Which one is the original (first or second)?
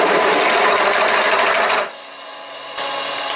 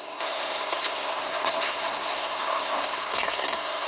first